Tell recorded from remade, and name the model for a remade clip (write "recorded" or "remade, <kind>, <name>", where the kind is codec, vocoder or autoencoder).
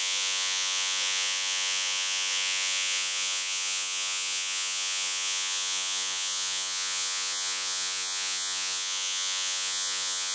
remade, vocoder, Vocos